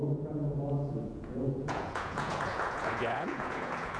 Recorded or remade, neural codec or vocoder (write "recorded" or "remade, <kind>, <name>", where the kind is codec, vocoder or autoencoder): remade, vocoder, Vocos